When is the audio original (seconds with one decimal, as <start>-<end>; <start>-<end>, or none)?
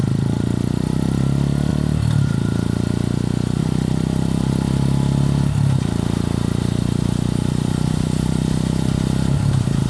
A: 0.0-9.9